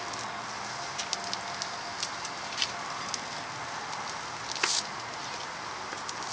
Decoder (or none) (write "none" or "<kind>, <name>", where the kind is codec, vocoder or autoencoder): none